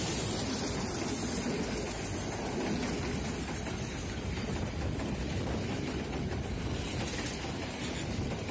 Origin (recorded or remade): recorded